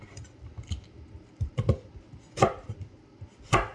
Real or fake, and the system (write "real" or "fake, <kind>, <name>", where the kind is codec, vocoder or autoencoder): real